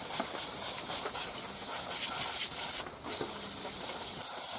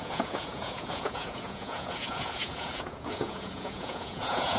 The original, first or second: first